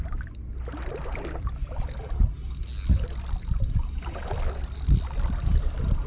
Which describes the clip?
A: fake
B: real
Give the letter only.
B